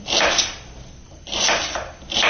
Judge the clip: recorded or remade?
recorded